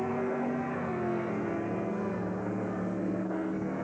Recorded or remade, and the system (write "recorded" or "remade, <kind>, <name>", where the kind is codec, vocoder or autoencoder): remade, codec, SNAC